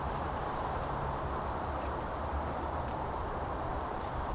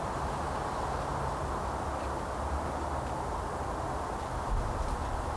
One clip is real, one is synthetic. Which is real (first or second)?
second